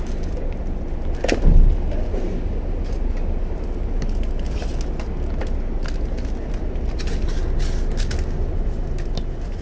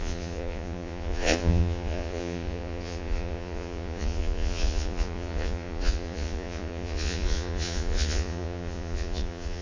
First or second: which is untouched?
first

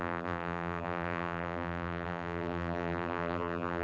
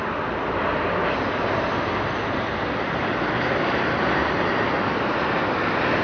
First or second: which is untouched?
second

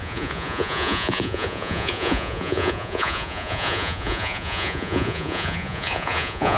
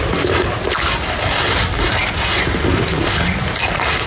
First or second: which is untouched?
second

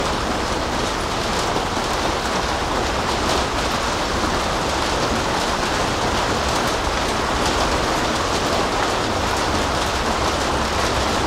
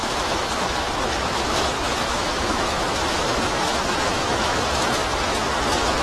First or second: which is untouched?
first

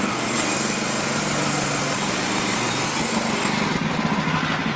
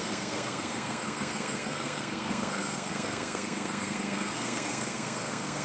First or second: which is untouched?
first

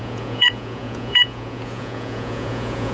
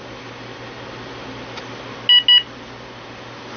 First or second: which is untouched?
second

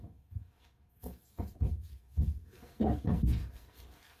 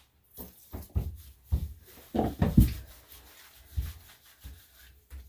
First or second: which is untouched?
second